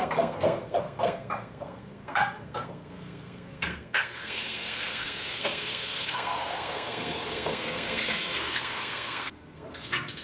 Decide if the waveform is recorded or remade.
remade